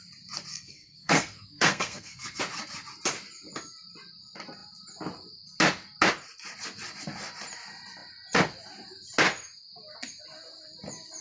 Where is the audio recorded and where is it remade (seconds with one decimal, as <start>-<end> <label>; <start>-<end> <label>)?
0.0-0.5 recorded; 0.5-2.4 remade; 2.4-11.2 recorded